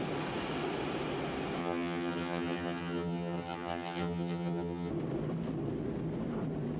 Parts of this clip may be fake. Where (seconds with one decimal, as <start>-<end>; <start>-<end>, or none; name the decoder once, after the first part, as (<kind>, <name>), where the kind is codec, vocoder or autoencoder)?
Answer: 1.6-4.9 (vocoder, HiFi-GAN)